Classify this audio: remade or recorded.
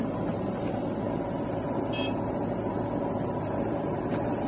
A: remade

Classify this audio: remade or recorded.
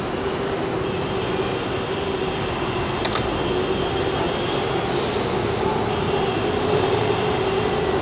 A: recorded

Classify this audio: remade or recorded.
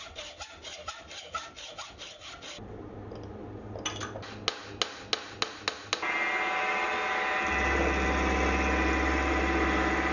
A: recorded